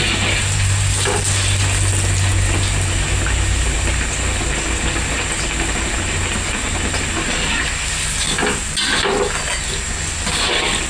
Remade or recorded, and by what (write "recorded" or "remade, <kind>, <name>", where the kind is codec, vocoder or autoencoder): recorded